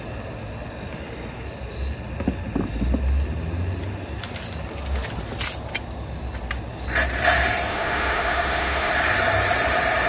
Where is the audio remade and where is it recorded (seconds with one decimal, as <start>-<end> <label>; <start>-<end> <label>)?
0.0-7.7 recorded; 7.7-8.9 remade; 8.9-10.1 recorded